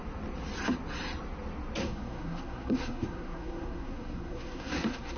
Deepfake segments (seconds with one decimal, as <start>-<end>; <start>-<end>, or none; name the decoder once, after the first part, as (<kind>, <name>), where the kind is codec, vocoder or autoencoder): 1.8-5.2 (codec, SNAC)

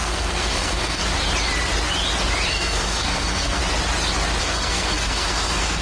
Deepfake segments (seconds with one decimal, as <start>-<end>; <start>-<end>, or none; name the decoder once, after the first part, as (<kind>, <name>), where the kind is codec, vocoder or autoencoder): 0.0-1.0 (codec, SNAC); 2.5-3.6; 4.4-5.8

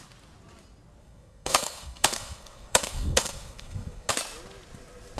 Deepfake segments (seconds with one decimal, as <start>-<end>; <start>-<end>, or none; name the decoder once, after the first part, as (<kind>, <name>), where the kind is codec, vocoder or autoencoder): 1.0-4.1 (codec, SNAC)

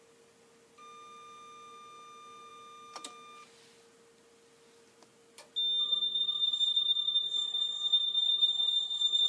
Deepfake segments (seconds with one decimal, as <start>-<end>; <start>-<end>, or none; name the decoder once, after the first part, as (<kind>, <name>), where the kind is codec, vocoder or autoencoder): 5.8-9.3 (codec, SNAC)